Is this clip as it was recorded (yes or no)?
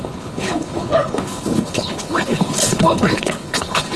no